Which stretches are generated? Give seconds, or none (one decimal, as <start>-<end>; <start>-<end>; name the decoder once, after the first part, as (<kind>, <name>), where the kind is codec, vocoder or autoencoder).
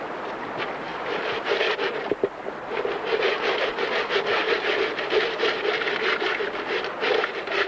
none